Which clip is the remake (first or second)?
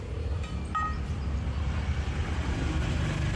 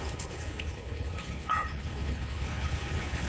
second